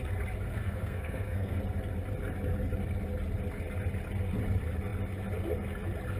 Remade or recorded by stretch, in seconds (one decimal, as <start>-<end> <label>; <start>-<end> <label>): 0.0-0.5 recorded; 0.5-1.6 remade; 1.6-6.2 recorded